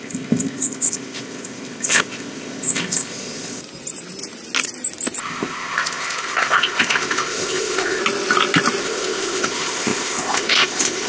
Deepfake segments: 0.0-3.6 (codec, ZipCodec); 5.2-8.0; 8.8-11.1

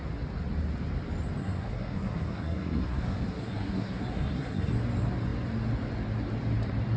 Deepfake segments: 1.4-4.7 (codec, SNAC)

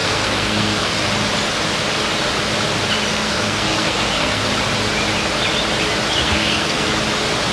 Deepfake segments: 0.0-1.1 (codec, SNAC); 3.1-4.5; 6.2-6.9